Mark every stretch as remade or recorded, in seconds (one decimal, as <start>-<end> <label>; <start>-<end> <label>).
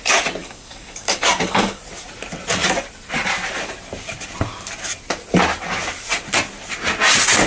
0.0-0.4 recorded; 0.4-1.8 remade; 1.8-7.5 recorded